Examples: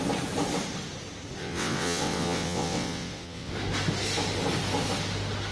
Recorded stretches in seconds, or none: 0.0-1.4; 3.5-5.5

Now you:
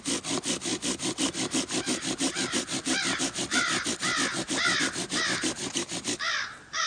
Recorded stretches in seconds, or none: 0.0-6.9